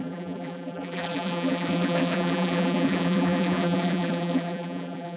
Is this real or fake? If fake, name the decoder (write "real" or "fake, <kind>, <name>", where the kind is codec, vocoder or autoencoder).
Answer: fake, vocoder, BigVGAN v2